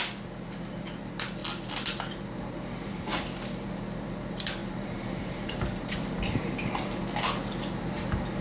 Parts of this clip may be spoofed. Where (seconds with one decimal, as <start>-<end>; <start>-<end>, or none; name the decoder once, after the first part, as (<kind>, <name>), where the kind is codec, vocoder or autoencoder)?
4.6-7.0 (vocoder, BigVGAN v2)